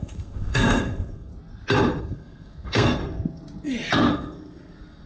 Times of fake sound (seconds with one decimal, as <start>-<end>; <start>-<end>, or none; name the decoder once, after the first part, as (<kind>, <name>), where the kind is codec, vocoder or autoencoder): 0.0-1.3 (codec, SNAC); 2.0-3.0; 4.1-5.1